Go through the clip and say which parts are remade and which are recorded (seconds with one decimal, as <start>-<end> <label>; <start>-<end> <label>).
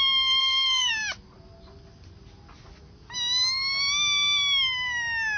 0.0-0.4 recorded; 0.4-0.9 remade; 0.9-5.4 recorded